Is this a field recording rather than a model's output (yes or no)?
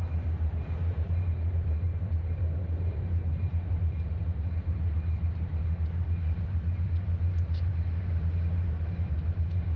no